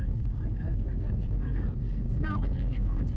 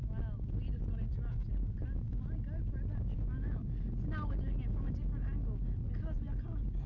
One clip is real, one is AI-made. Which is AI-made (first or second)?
first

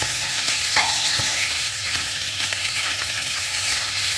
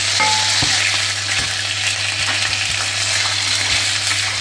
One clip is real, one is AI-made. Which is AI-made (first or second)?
first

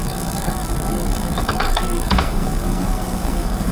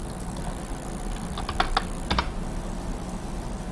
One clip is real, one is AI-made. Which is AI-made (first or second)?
first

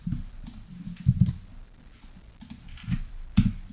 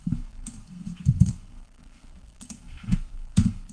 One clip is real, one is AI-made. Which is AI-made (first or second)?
second